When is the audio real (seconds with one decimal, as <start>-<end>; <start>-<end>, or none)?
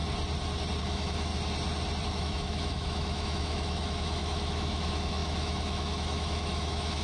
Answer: 0.0-0.8; 1.3-2.1